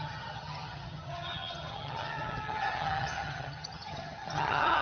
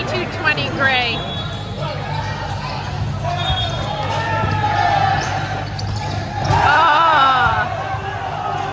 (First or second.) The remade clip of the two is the first